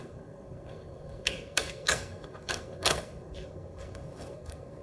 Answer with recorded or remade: remade